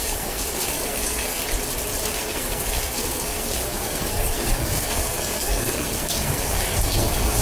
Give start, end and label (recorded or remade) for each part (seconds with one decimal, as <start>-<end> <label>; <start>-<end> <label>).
0.0-1.4 remade; 1.4-2.0 recorded; 2.0-7.4 remade